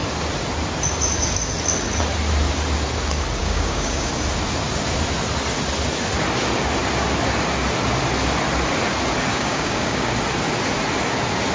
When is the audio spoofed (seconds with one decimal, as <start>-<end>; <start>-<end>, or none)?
3.4-4.1; 9.3-10.1